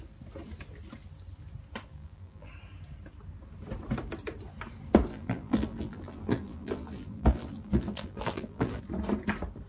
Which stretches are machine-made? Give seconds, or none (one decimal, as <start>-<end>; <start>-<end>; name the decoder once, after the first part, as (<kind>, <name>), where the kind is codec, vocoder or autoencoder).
1.9-2.5 (vocoder, BigVGAN v2); 5.1-8.8